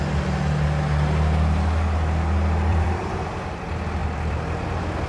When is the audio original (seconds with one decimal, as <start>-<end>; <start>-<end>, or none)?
0.0-2.7; 3.3-4.0; 4.6-5.1